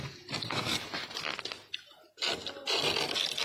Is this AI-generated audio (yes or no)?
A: no